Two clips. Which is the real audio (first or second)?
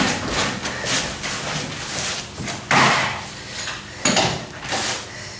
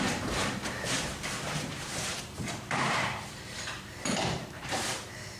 first